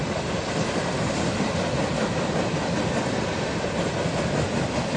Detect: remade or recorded recorded